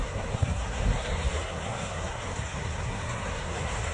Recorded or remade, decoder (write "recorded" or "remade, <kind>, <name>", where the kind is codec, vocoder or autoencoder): remade, codec, SNAC